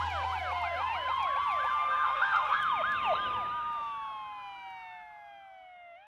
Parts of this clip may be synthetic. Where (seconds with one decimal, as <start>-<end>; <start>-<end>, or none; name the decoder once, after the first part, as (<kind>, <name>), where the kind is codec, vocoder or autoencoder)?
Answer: 1.7-2.6 (codec, SNAC)